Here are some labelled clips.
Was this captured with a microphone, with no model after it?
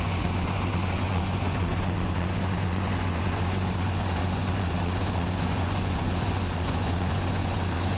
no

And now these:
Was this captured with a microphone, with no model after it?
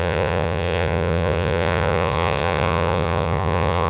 no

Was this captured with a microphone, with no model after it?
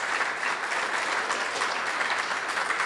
yes